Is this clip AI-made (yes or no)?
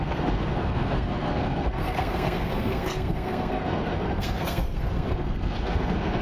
yes